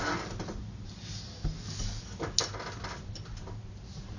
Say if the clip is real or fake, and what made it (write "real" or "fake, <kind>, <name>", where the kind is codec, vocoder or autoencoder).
real